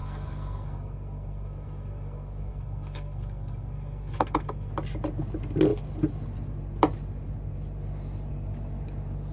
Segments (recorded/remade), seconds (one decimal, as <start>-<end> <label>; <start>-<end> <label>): 0.0-4.7 remade; 4.7-9.3 recorded